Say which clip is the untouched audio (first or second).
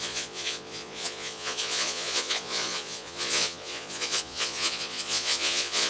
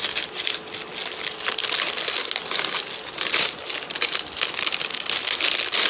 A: second